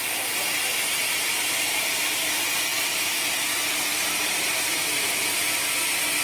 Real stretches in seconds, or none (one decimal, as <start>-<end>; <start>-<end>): 0.0-1.0; 2.3-3.9; 5.5-6.2